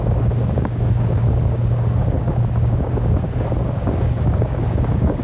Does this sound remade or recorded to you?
remade